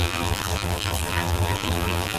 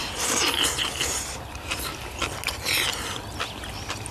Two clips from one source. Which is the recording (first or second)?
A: second